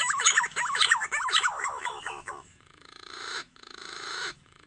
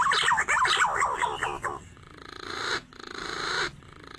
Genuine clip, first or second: second